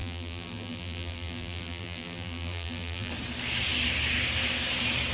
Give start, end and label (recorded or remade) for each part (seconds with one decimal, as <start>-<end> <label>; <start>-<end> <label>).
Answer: 0.0-3.1 remade; 3.1-5.1 recorded